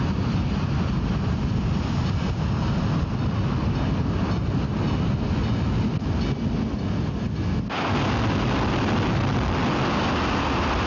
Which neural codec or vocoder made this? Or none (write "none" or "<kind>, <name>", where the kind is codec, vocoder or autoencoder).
none